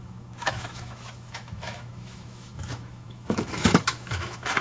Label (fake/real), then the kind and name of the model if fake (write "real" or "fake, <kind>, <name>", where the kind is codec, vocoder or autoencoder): fake, autoencoder, DAC-VAE